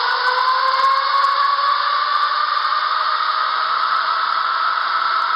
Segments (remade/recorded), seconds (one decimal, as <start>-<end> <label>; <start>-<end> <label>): 0.0-3.4 recorded; 3.4-4.1 remade; 4.1-5.4 recorded